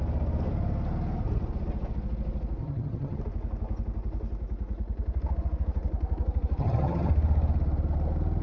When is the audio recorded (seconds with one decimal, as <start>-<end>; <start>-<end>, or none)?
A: 0.0-2.6; 3.2-6.6; 7.1-8.4